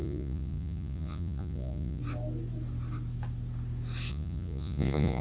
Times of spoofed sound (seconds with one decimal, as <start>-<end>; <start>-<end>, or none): 0.0-2.0; 4.1-5.2